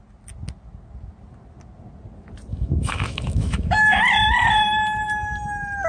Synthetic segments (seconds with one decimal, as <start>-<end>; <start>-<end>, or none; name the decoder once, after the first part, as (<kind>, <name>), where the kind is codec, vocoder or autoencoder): 2.5-4.0 (autoencoder, DAC-VAE)